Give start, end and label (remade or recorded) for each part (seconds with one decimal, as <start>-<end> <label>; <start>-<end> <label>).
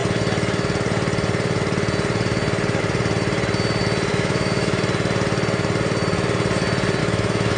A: 0.0-4.1 recorded; 4.1-4.8 remade; 4.8-7.0 recorded; 7.0-7.6 remade